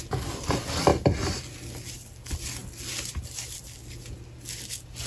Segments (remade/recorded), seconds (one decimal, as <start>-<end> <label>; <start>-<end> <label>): 0.0-5.1 recorded